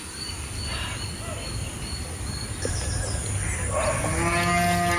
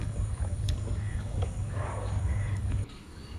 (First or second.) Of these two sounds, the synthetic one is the second